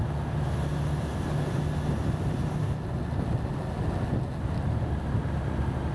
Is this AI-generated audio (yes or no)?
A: no